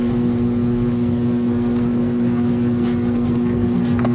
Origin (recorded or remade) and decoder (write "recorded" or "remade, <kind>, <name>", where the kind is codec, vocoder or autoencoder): remade, codec, SNAC